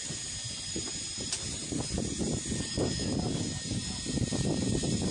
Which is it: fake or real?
fake